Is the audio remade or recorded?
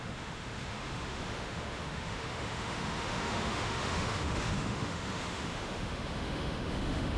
remade